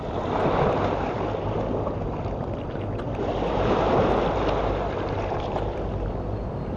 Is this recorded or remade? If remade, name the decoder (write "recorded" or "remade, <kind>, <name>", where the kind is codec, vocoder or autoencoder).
remade, vocoder, BigVGAN v2